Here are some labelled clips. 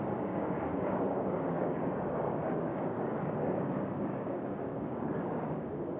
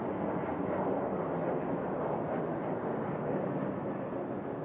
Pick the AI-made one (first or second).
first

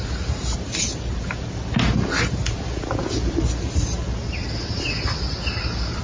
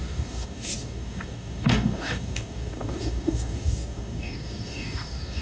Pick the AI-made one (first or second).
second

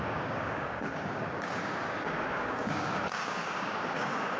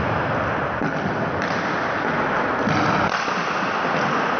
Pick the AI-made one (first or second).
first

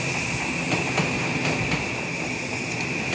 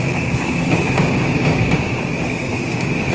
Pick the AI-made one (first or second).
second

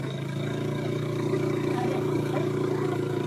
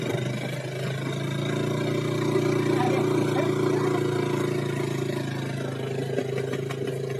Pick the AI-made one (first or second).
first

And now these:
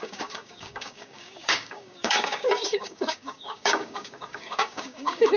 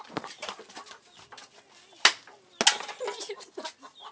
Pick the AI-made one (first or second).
first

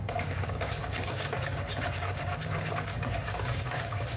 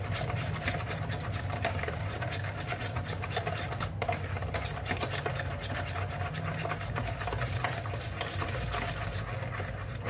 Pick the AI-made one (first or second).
first